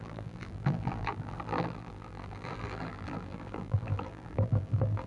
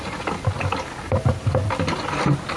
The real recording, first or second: second